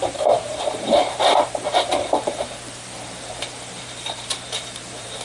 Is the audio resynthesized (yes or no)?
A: yes